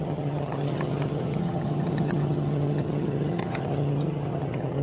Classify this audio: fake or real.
fake